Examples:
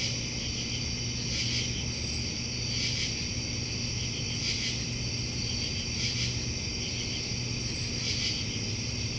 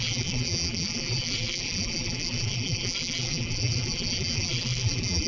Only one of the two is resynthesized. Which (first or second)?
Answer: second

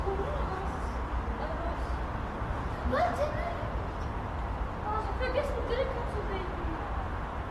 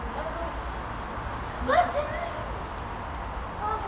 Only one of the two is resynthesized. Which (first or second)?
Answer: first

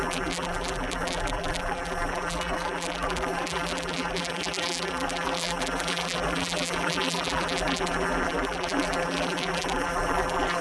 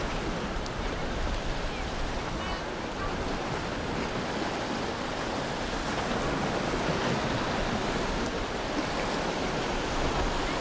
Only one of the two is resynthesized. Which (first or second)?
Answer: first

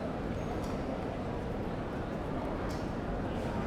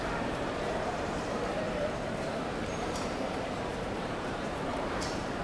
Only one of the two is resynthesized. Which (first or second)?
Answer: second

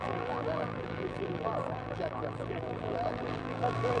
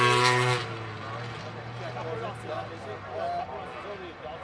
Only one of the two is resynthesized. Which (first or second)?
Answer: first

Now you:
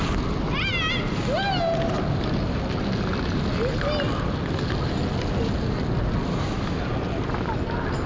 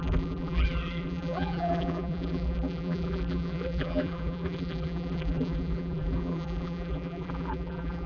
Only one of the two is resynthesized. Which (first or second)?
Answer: second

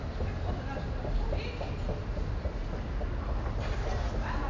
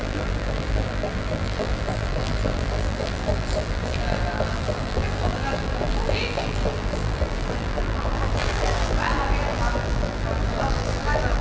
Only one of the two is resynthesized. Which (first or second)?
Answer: second